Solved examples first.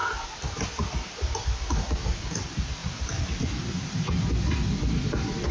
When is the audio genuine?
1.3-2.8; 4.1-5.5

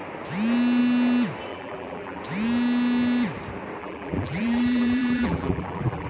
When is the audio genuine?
0.0-1.5; 2.2-3.8

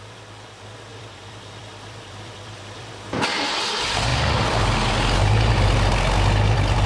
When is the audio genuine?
0.0-0.9; 2.9-6.9

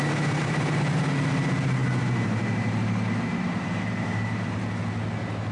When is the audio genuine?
0.0-0.4; 1.0-1.8; 4.6-5.5

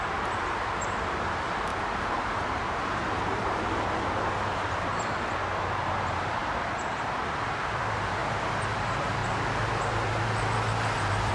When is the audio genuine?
1.7-5.5; 6.4-7.6; 8.2-8.7; 9.2-11.3

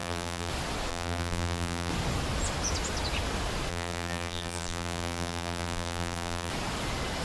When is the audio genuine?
0.5-0.9; 1.9-3.7; 6.5-7.2

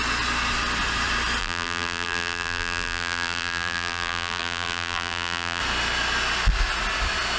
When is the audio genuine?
0.0-1.4; 5.6-7.4